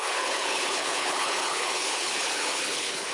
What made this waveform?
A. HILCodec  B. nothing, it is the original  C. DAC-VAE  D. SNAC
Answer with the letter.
A